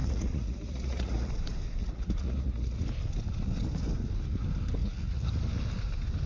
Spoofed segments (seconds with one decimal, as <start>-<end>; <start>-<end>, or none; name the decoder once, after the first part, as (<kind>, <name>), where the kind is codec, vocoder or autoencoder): 0.0-1.3 (vocoder, Vocos); 1.8-2.8; 4.8-5.3